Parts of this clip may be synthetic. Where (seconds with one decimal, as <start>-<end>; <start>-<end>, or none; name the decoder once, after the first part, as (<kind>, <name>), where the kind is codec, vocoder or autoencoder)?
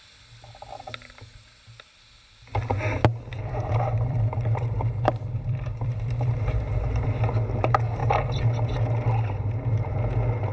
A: 3.3-6.6 (vocoder, BigVGAN v2)